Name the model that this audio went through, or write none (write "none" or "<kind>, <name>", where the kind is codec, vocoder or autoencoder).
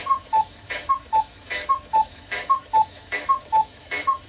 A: autoencoder, DAC-VAE